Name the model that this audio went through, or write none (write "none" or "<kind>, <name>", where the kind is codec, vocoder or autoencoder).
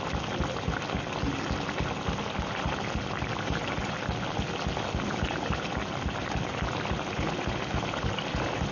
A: none